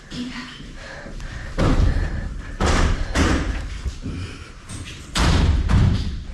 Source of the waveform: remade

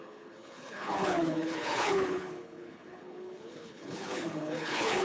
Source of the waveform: remade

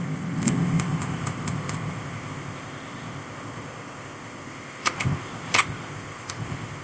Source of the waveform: remade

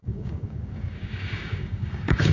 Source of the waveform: remade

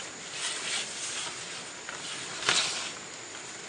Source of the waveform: recorded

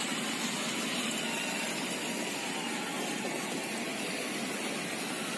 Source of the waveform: recorded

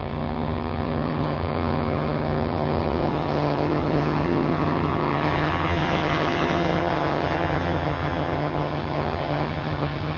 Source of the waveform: remade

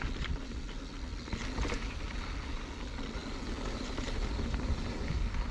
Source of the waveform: recorded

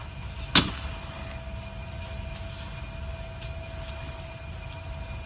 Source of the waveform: recorded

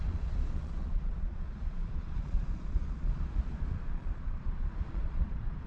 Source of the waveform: remade